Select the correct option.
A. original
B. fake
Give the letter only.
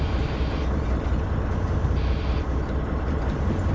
A